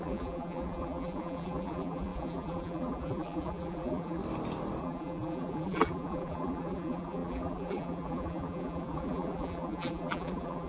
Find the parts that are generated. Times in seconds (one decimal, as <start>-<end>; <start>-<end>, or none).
0.0-4.2; 4.8-10.7